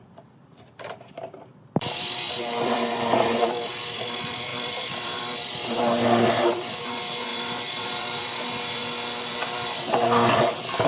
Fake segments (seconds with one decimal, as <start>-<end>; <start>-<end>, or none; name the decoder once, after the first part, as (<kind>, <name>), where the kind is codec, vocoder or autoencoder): 0.0-8.8 (vocoder, BigVGAN v2); 9.4-10.9